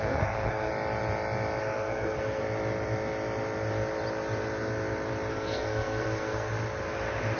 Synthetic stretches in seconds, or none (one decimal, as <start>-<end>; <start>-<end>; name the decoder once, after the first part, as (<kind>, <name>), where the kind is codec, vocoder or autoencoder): 0.0-0.7 (codec, SNAC); 1.6-2.4; 5.3-6.5